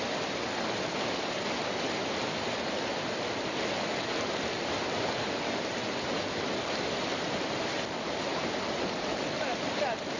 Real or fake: real